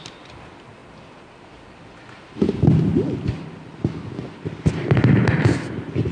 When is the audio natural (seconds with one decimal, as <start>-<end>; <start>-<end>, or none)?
0.0-6.1